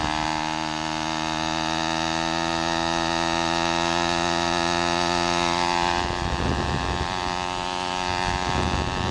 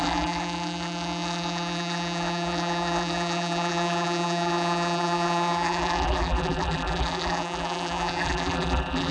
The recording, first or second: first